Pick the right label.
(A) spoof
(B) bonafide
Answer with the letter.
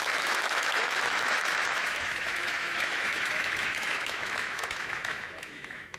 A